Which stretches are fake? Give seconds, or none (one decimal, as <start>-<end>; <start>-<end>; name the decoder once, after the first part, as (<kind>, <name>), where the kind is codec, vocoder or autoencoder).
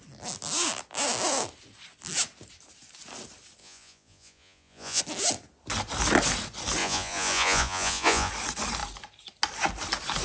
3.6-5.0 (vocoder, Vocos); 6.8-8.3